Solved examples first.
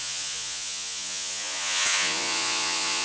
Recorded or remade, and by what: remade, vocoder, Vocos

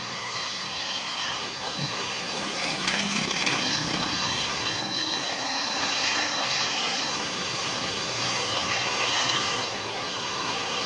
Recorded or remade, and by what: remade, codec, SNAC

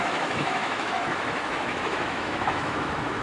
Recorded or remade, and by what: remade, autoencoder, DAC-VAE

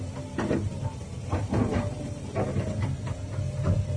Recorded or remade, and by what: recorded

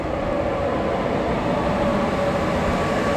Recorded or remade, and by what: recorded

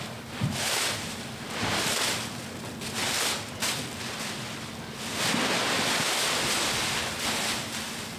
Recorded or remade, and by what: recorded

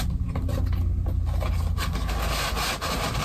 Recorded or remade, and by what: recorded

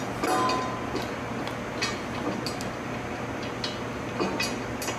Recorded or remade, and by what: recorded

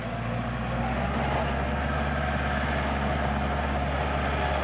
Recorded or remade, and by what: recorded